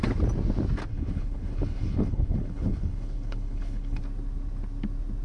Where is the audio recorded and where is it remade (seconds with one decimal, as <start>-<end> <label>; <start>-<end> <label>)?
0.0-0.9 recorded; 0.9-4.0 remade; 4.0-5.2 recorded